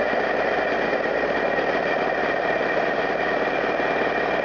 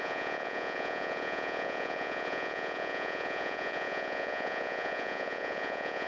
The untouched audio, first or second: first